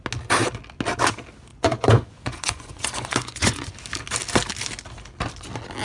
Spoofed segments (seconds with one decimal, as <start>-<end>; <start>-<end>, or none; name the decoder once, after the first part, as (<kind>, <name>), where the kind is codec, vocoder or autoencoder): 1.5-3.7 (vocoder, Vocos)